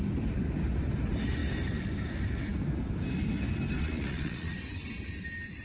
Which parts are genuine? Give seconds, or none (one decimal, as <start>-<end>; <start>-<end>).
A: 0.0-3.8; 4.5-5.6